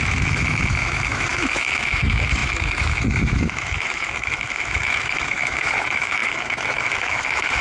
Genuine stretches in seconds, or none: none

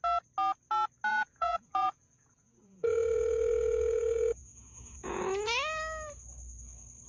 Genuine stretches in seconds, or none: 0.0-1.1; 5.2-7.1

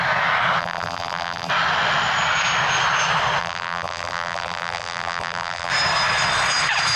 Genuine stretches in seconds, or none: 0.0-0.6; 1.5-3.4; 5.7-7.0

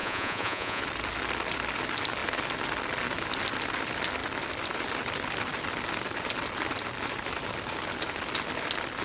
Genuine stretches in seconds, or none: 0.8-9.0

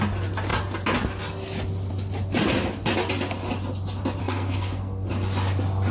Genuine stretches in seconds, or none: 0.0-4.2; 5.1-5.9

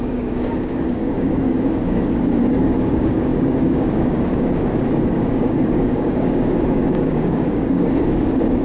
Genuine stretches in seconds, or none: none